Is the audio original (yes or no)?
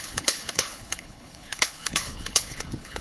no